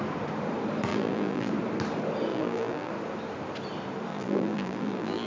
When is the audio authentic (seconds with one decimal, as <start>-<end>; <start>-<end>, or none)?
0.0-0.9; 1.5-2.3; 2.9-4.1

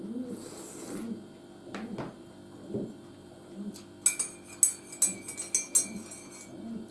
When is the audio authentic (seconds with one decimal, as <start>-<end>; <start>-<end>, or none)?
0.0-3.2; 3.7-6.9

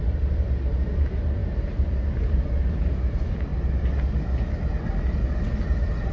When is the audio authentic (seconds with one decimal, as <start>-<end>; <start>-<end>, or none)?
0.0-1.4; 2.4-6.1

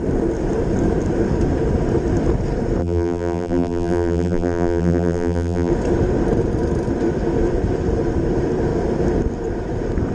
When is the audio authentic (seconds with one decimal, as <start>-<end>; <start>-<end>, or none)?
0.0-2.8; 5.7-10.1

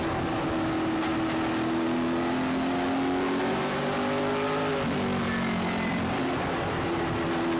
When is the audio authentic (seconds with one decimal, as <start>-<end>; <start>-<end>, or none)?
0.0-7.6

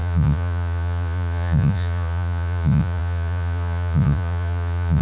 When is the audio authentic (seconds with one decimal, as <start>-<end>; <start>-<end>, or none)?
none

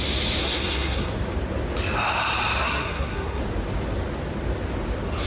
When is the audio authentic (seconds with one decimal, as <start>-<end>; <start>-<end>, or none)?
0.0-0.4; 1.1-2.6; 3.4-5.3